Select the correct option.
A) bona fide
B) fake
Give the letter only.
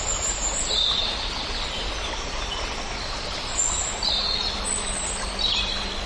A